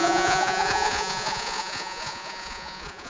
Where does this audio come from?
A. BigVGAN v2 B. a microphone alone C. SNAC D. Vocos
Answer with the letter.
D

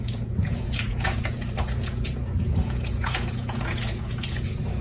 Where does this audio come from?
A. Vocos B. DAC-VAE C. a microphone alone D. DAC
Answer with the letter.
A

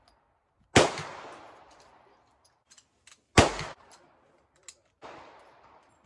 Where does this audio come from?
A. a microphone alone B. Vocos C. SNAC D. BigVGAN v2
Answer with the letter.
A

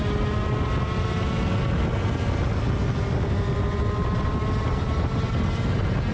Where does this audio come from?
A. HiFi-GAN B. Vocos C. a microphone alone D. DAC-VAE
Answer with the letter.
C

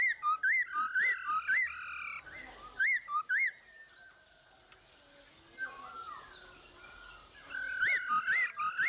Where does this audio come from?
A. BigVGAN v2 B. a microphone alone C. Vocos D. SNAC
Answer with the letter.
B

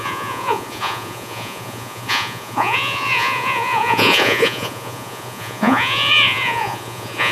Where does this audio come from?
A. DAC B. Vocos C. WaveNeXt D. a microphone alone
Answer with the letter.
B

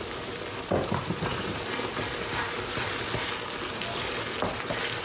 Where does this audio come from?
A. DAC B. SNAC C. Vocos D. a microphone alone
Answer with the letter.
D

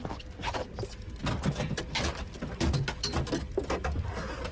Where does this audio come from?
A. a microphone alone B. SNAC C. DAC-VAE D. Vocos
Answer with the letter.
A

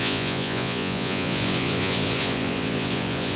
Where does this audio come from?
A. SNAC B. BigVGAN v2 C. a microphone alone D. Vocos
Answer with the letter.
D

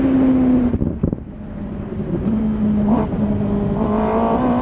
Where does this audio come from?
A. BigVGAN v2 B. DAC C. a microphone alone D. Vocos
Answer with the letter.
C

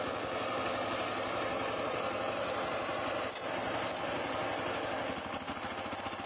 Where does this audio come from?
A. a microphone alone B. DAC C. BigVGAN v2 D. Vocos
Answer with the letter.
A